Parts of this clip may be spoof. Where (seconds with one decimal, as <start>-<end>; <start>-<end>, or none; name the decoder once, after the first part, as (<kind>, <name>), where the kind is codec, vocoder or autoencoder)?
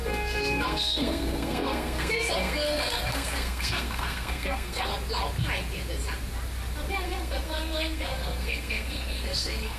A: 0.0-4.9 (codec, SNAC); 6.9-9.8